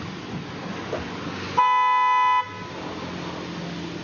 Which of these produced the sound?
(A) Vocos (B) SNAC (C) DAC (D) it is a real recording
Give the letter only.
D